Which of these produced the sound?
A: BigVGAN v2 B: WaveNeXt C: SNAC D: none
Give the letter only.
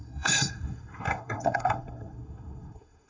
C